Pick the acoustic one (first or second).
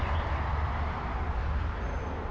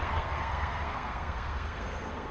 first